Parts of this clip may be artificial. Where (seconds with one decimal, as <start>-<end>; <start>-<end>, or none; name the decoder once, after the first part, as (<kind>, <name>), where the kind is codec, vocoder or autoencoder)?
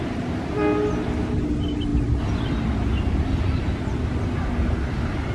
none